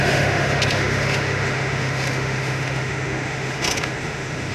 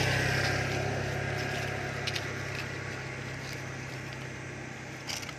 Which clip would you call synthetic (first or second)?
first